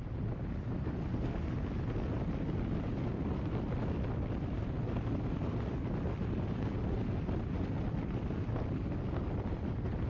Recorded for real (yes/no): yes